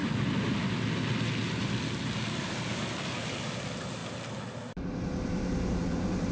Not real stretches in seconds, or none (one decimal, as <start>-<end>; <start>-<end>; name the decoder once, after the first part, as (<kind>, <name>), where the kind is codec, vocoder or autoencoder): none